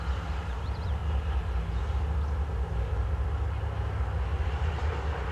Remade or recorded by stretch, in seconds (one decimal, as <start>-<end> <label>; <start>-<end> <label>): 0.0-1.0 remade; 1.0-4.2 recorded; 4.2-5.3 remade